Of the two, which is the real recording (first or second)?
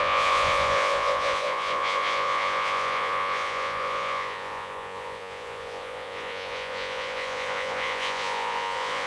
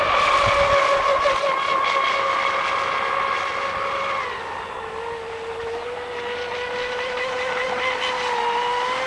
second